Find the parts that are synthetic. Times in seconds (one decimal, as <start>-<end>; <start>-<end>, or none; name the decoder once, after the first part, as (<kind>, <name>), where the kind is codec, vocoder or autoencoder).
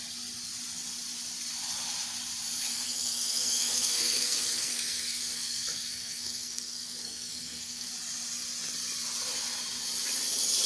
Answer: 2.7-7.9 (codec, SNAC)